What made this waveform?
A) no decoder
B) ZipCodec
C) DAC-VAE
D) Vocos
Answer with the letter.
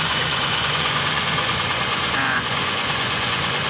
D